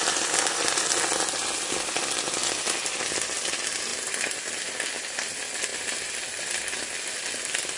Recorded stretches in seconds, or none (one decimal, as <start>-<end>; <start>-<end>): 0.0-7.8